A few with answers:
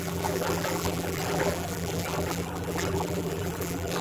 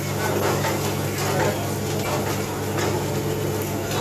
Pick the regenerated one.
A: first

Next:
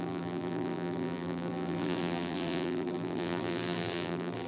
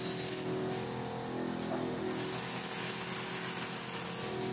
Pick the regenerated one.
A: first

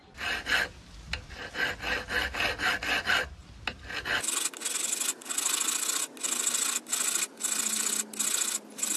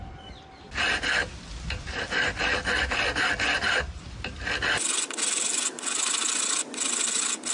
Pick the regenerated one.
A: second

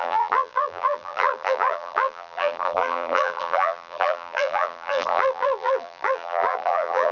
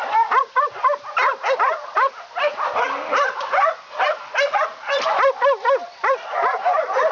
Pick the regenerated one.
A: first